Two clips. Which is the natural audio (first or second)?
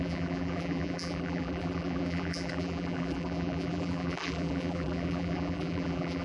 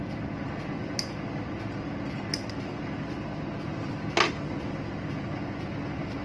second